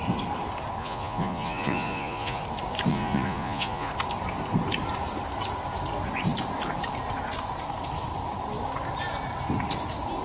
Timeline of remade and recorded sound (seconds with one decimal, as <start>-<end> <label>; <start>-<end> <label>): 0.0-0.8 recorded; 0.8-2.4 remade; 2.4-2.9 recorded; 2.9-3.9 remade; 3.9-10.2 recorded